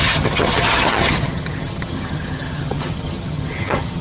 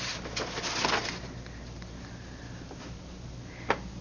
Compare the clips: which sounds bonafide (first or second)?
second